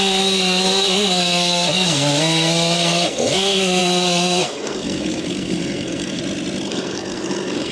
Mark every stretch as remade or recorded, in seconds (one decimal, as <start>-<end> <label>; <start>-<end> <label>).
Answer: 0.0-6.2 remade; 6.2-6.7 recorded; 6.7-7.7 remade